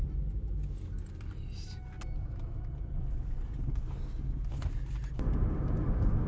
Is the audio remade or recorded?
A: recorded